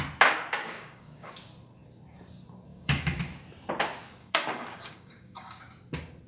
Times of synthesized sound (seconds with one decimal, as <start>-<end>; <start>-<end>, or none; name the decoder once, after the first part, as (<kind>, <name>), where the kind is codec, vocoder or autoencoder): 0.6-1.3 (codec, DAC); 2.7-3.2; 4.2-5.6